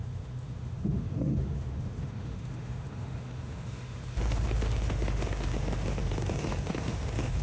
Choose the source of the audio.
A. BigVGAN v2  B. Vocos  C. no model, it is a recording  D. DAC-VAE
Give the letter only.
D